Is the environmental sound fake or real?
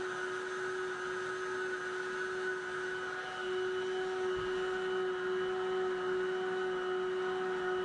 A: real